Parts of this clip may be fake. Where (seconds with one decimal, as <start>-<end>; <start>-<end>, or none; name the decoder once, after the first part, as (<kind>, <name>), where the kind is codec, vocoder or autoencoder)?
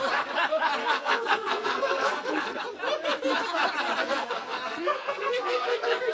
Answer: 0.8-2.6 (codec, SNAC); 4.0-6.1